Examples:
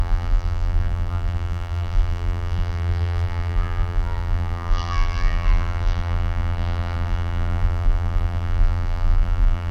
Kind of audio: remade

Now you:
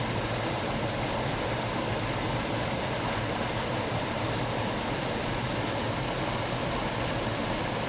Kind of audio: recorded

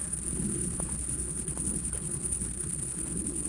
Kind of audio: remade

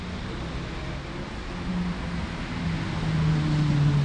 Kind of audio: recorded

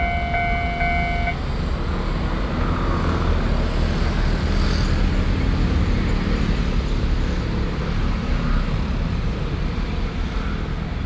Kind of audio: recorded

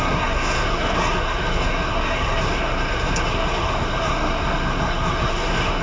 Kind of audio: remade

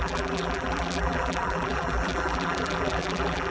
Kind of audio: remade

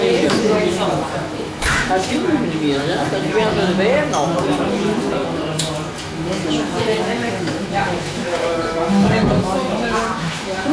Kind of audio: remade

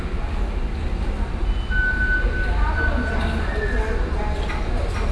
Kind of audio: recorded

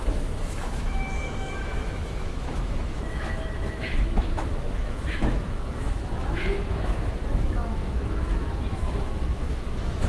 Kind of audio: remade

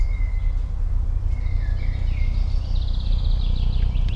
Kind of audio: recorded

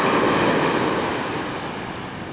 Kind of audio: recorded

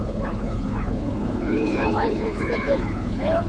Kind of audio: remade